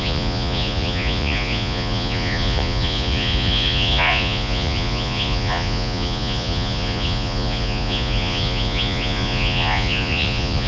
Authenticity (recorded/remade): remade